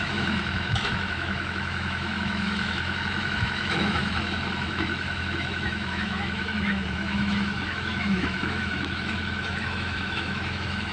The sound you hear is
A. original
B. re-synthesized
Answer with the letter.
B